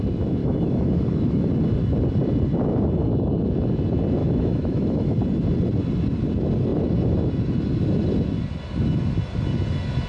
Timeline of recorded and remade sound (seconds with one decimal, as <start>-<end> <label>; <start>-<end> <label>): 0.0-0.4 recorded; 0.4-1.5 remade; 1.5-4.2 recorded; 4.2-5.2 remade; 5.2-10.1 recorded